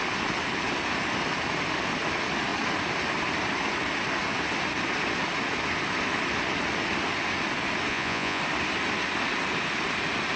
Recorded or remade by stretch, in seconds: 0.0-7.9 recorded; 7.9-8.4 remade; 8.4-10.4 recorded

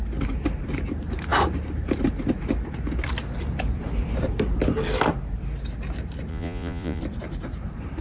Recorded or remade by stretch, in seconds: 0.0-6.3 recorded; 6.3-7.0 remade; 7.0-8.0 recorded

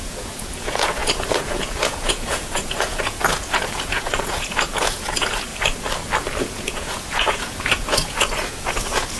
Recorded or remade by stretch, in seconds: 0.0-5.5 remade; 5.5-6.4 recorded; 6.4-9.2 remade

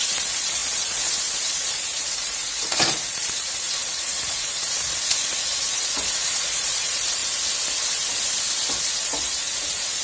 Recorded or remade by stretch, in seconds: 0.0-7.2 remade; 7.2-8.8 recorded; 8.8-10.0 remade

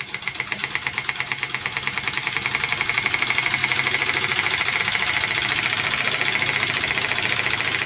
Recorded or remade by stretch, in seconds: 0.0-7.9 recorded